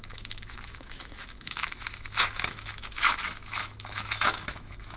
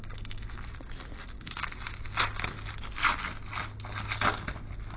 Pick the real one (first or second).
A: second